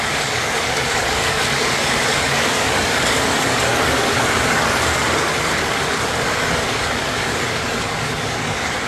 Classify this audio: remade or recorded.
remade